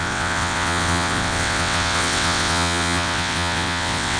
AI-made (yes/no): yes